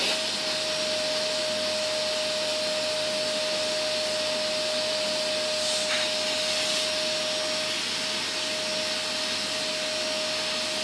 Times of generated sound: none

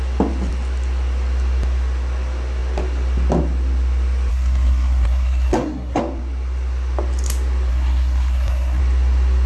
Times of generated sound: 4.3-6.0 (codec, SNAC); 7.7-8.8

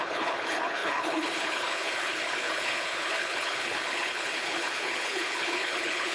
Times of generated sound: 0.0-6.1 (codec, HILCodec)

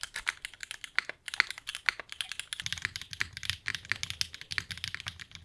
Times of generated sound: none

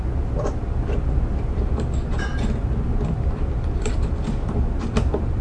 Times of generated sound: none